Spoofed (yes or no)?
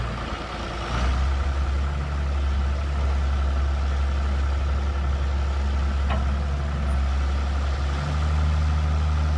no